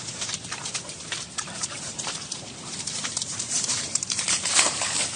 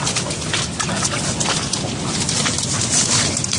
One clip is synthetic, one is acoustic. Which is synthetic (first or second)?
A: first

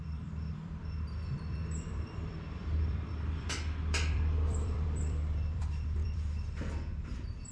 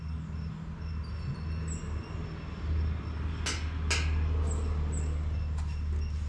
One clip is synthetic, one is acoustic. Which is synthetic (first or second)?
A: first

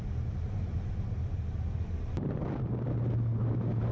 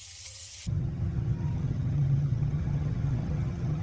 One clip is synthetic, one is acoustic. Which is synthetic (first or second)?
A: second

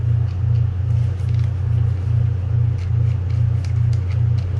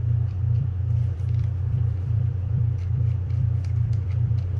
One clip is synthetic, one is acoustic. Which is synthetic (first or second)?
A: second